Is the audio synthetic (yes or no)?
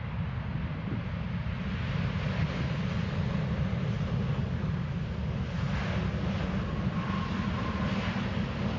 no